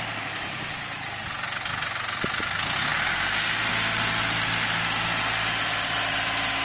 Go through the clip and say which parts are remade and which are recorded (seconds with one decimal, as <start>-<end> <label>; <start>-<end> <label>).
0.0-1.7 recorded; 1.7-2.4 remade; 2.4-6.6 recorded